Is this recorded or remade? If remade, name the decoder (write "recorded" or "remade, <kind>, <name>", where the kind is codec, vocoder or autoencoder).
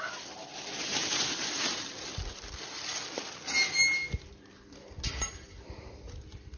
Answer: recorded